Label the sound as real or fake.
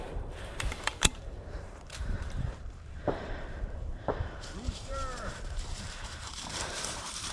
fake